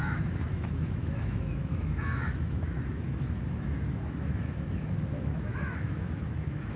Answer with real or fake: fake